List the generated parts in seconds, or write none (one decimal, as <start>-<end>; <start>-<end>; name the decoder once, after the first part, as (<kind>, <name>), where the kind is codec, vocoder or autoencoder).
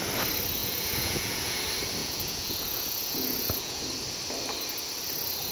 0.6-1.6 (vocoder, Vocos); 2.0-3.8